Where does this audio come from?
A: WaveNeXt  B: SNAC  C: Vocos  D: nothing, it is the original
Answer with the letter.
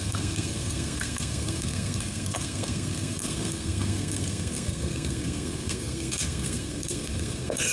B